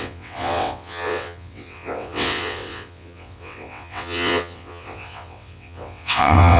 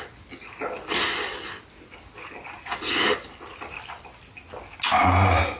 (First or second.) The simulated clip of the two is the first